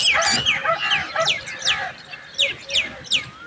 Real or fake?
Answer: real